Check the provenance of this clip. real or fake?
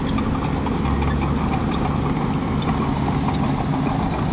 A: real